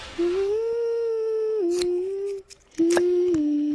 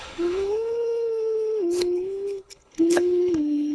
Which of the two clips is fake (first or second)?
second